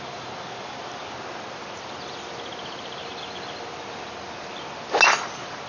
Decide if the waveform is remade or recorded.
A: recorded